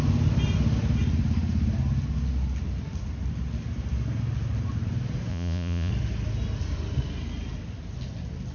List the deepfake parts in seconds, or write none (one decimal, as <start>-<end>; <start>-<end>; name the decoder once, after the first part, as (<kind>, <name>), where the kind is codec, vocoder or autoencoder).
5.3-5.9 (vocoder, Vocos)